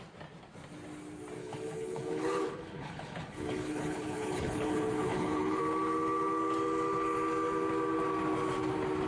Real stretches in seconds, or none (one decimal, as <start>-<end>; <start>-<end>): 0.0-1.4; 5.6-9.1